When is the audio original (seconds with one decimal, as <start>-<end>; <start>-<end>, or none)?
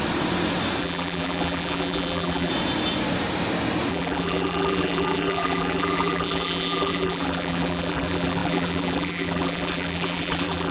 0.0-0.8; 2.5-3.9